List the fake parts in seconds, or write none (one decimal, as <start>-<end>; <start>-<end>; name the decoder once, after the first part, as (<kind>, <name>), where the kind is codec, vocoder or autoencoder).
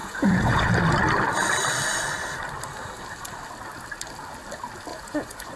0.0-0.7 (vocoder, Vocos); 4.9-5.6